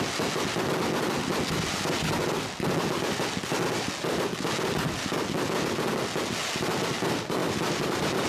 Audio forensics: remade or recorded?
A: recorded